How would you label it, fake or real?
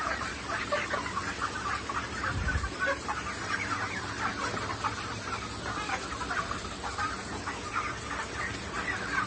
real